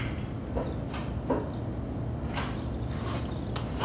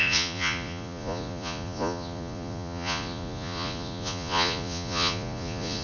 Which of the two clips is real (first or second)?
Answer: first